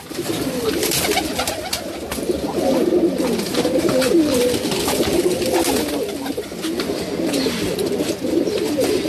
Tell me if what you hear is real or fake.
fake